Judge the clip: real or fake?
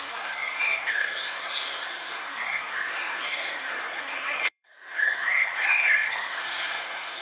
fake